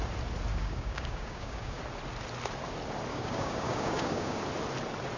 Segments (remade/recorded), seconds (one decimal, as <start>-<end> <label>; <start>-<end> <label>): 0.0-0.5 recorded; 0.5-1.8 remade; 1.8-3.1 recorded; 3.1-4.4 remade; 4.4-5.2 recorded